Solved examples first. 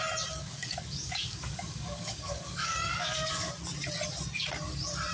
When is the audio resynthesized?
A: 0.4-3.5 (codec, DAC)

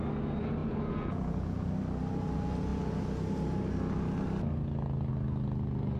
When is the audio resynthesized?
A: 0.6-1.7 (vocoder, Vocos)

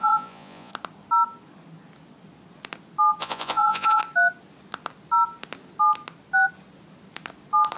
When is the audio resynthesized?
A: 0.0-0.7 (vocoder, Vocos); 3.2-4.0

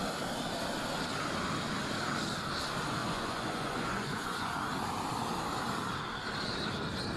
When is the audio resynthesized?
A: 3.0-4.5 (vocoder, Vocos)

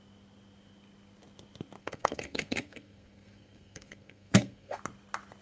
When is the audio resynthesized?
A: 1.8-4.8 (codec, SNAC)

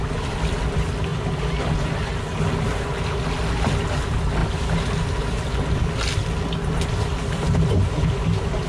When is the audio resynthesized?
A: none

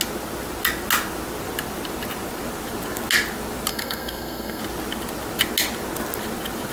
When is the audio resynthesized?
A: 3.7-4.6 (codec, SNAC)